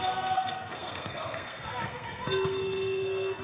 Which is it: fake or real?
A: fake